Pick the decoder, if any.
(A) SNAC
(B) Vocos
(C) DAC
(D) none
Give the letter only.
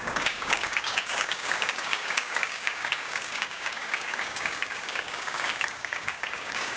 C